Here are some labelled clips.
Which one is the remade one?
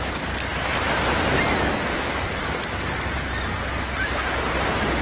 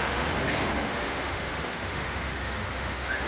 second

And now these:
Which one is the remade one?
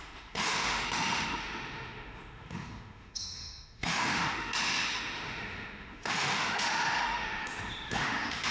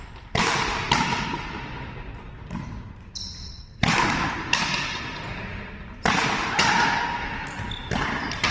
first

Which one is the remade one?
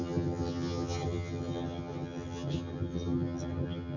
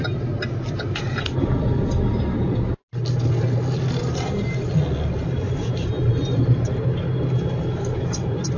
first